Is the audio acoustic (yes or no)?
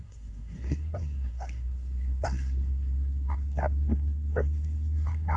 no